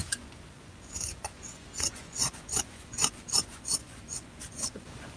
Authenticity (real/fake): fake